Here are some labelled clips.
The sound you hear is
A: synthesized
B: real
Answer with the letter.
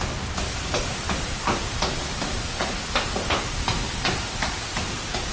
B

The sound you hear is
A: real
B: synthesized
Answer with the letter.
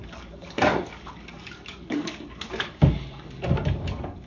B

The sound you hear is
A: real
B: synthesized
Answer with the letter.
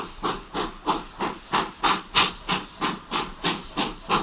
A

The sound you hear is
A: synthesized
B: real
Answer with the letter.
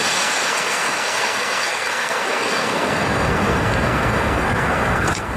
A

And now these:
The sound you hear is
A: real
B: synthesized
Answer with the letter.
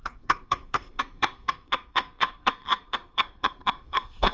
B